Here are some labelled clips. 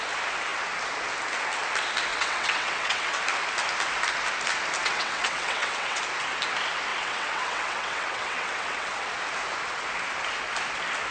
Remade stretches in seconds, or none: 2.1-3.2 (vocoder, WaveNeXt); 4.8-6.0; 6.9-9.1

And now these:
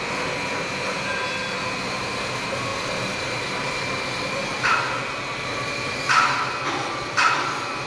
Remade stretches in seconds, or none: 2.7-3.9 (vocoder, BigVGAN v2)